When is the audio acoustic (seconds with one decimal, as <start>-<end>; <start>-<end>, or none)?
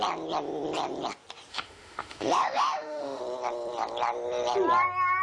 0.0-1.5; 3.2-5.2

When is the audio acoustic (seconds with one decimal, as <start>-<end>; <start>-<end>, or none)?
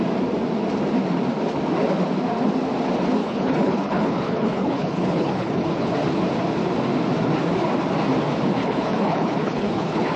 0.0-3.2; 5.9-8.6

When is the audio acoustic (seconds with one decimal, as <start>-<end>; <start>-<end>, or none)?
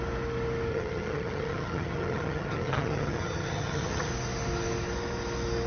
0.0-0.7; 4.1-5.7